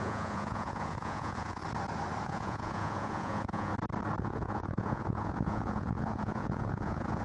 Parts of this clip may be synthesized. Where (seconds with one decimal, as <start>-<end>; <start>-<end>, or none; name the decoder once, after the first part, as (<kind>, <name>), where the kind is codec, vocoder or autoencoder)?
0.0-1.6 (vocoder, Vocos); 2.2-3.7; 4.2-7.2